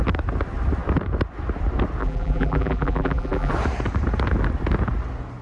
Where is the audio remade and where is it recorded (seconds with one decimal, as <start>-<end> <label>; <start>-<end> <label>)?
0.0-2.0 recorded; 2.0-3.5 remade; 3.5-5.4 recorded